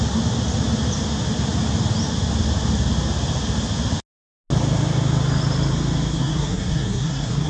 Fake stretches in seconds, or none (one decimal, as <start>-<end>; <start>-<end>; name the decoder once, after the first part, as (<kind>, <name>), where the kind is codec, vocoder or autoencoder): 6.1-7.5 (codec, SNAC)